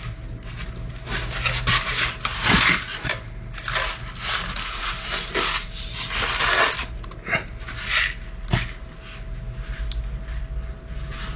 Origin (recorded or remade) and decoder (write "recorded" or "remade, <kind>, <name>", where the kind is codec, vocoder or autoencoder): recorded